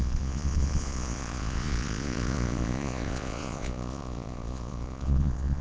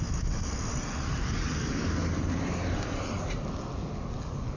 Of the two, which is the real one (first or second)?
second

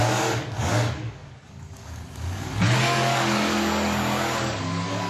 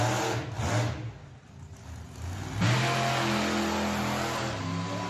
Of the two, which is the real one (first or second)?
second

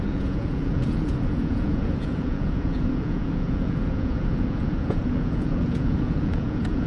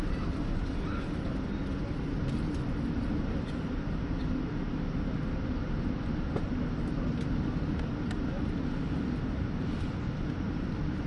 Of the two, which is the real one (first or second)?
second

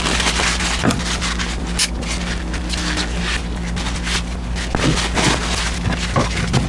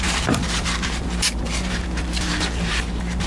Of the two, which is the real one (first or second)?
first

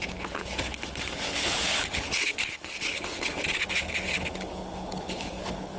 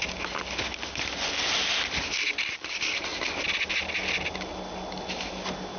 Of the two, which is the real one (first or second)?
second